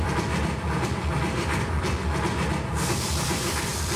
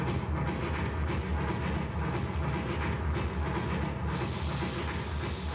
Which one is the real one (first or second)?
second